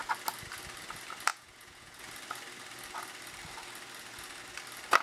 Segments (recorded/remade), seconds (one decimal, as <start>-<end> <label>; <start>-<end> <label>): 0.0-1.3 recorded; 1.3-2.0 remade; 2.0-5.0 recorded